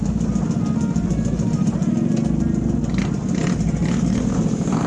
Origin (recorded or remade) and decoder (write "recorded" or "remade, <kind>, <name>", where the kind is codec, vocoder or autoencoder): recorded